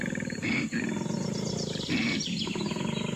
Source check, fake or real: fake